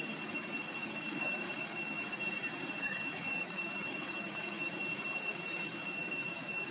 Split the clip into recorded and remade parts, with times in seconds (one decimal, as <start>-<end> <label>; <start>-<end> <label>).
0.0-2.1 remade; 2.1-2.8 recorded; 2.8-6.7 remade

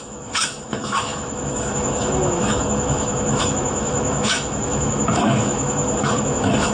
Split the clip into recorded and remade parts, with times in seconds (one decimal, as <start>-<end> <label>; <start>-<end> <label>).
0.0-6.7 remade

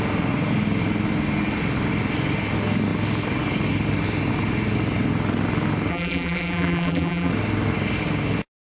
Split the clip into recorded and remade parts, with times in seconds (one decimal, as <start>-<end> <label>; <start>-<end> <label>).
0.0-5.9 recorded; 5.9-7.3 remade; 7.3-8.6 recorded

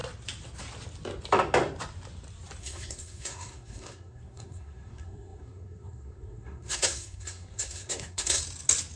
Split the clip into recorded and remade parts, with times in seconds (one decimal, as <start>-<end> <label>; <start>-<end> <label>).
0.0-2.6 recorded; 2.6-8.4 remade; 8.4-9.0 recorded

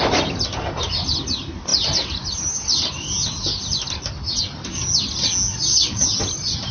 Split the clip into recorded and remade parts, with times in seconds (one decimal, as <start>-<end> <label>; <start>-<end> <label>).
0.0-6.7 recorded